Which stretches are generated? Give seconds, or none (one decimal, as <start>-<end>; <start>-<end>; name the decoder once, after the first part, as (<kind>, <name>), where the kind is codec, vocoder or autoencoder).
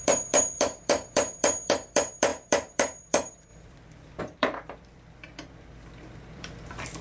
0.0-7.0 (vocoder, BigVGAN v2)